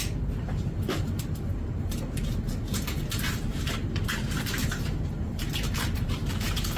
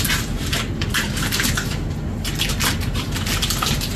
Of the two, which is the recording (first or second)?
second